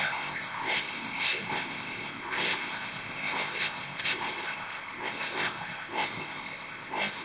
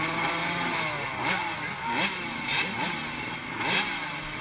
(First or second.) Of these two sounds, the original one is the second